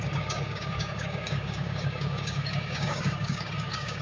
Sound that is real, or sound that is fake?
fake